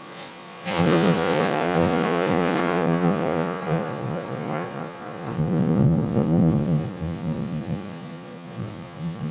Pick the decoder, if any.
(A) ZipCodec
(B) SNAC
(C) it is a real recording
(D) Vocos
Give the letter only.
D